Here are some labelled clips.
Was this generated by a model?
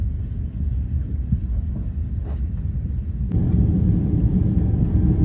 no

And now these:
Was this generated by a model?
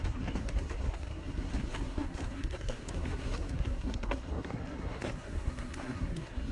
yes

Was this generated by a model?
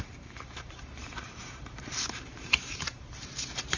yes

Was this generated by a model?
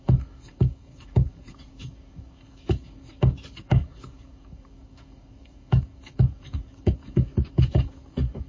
yes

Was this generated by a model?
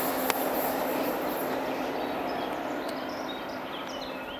no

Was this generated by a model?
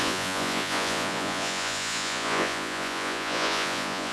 yes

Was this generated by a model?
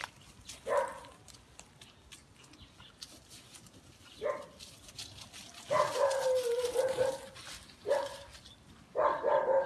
no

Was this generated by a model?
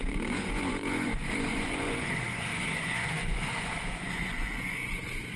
yes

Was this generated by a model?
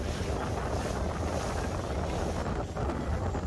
no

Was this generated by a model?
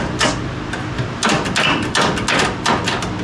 no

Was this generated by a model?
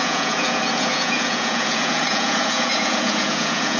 yes